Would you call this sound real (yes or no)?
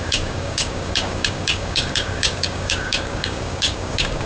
no